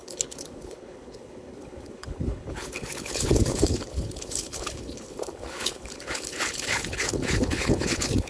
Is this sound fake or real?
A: fake